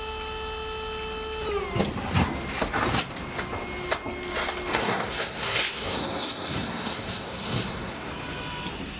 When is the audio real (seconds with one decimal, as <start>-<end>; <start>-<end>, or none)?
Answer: 0.0-4.7; 8.1-9.0